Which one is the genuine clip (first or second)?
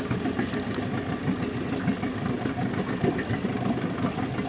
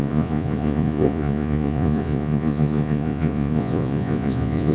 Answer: first